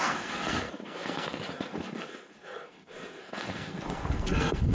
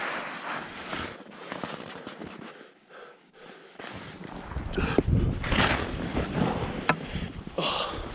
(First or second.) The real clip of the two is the second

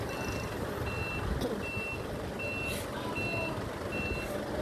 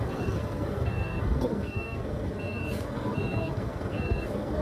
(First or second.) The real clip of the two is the first